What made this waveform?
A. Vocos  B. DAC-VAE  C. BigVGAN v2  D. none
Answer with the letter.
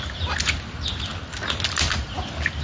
D